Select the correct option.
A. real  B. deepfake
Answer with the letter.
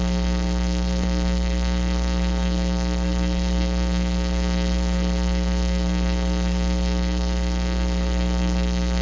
B